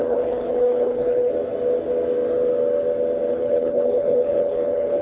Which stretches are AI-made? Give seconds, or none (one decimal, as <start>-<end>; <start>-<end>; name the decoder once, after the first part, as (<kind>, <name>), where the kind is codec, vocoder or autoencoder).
0.0-1.3 (codec, HILCodec); 3.3-5.0